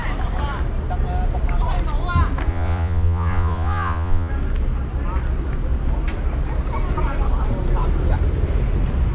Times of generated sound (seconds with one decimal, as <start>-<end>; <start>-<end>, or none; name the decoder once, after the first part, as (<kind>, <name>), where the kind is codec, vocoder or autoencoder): 2.5-4.3 (vocoder, Vocos)